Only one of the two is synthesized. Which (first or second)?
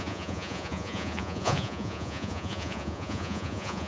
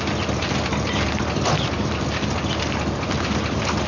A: first